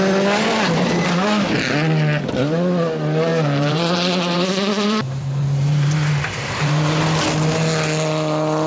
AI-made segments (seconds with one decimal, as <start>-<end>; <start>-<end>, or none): 3.3-7.0